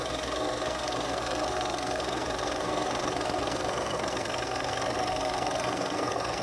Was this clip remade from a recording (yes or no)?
yes